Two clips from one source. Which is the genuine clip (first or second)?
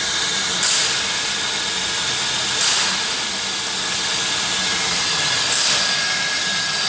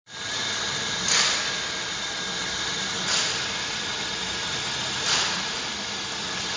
first